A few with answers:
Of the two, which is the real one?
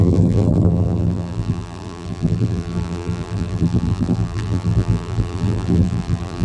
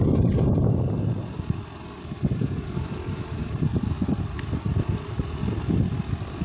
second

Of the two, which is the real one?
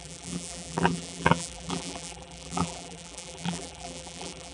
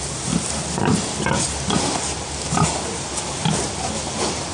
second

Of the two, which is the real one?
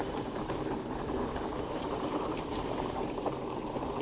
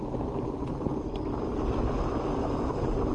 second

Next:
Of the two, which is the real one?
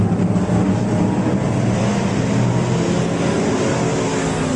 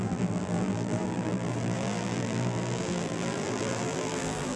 first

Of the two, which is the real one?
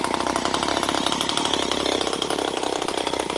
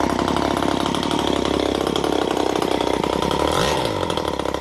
second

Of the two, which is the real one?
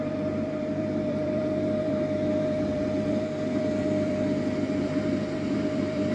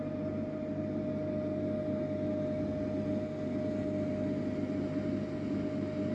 second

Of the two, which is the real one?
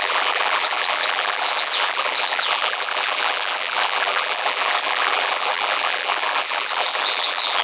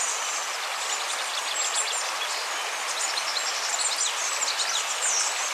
second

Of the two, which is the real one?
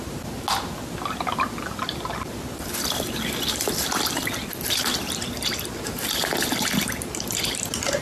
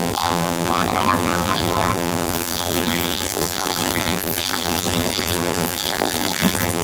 first